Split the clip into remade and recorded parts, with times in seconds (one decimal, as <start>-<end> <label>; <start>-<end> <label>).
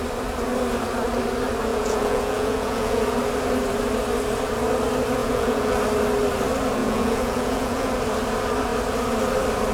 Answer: 0.0-1.7 recorded; 1.7-3.0 remade; 3.0-5.2 recorded; 5.2-5.8 remade; 5.8-6.8 recorded; 6.8-7.9 remade; 7.9-9.7 recorded